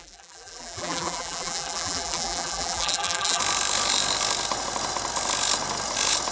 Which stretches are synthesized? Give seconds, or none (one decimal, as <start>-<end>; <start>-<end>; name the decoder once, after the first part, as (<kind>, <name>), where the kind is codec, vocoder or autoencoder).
0.0-3.4 (vocoder, BigVGAN v2)